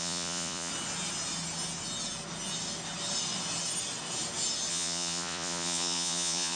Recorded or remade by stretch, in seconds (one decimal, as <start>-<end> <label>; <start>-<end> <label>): 0.0-0.7 remade; 0.7-4.7 recorded; 4.7-6.6 remade